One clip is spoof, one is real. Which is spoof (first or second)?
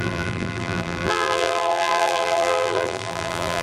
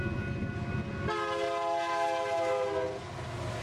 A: first